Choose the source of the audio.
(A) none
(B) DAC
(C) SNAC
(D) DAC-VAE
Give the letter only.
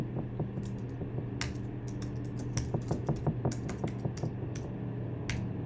A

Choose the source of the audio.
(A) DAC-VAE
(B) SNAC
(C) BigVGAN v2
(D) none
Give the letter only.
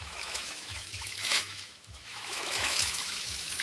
A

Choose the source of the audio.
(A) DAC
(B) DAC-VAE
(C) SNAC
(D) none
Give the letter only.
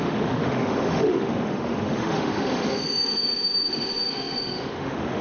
B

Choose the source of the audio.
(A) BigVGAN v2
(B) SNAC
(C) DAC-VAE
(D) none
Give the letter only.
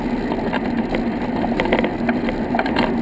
D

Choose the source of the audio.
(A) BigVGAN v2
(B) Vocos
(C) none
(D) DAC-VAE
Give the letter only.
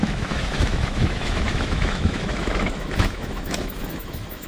D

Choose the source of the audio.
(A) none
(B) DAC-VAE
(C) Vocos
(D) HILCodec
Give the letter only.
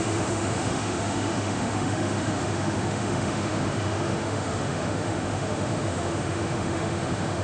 B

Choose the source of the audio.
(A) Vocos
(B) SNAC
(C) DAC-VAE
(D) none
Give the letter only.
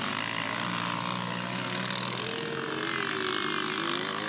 D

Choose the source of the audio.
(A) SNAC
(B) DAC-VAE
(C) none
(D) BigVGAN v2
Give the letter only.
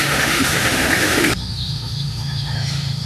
B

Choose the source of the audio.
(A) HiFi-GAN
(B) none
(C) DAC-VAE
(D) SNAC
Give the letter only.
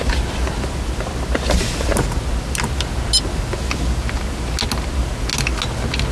B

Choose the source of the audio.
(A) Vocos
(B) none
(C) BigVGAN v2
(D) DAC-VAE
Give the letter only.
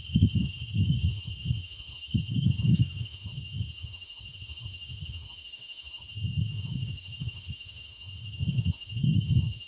D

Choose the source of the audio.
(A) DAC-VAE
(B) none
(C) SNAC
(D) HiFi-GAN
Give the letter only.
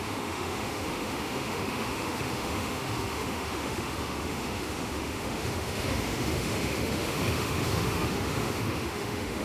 A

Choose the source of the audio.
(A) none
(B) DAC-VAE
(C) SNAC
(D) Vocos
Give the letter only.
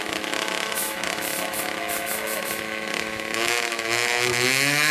B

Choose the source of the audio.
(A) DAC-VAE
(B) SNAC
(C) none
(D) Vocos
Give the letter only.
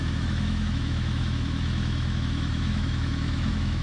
A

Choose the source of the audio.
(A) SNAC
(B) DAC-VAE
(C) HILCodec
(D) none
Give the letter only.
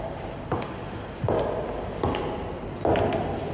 D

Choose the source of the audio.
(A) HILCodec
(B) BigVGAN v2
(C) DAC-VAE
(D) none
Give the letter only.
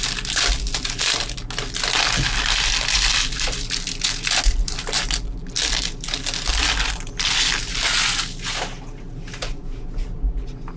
D